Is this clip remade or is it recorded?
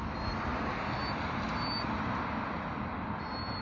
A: recorded